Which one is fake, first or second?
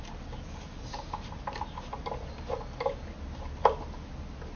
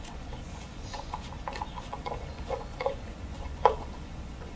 second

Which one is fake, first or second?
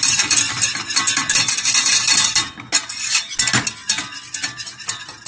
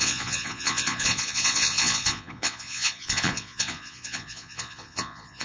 second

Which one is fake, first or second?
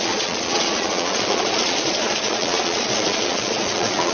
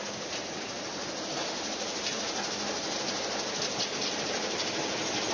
first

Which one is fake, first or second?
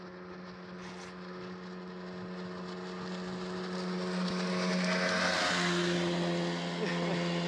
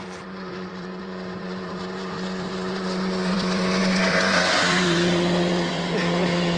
second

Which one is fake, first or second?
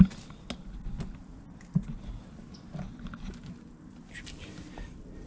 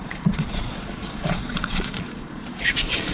second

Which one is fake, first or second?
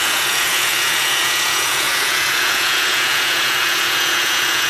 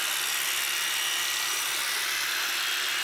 first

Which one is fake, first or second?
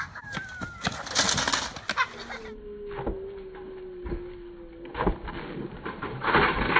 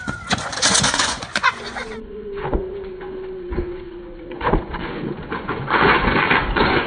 second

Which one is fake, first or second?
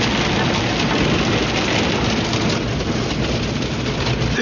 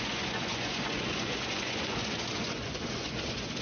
second